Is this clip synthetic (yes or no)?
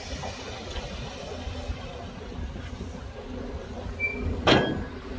no